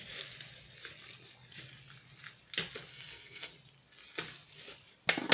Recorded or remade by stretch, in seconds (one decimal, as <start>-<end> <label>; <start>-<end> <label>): 0.0-2.9 recorded; 2.9-3.5 remade; 3.5-5.3 recorded